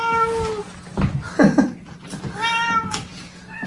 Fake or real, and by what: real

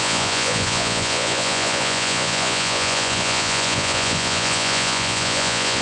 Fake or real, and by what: fake, vocoder, Vocos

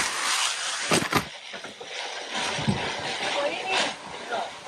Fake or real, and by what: real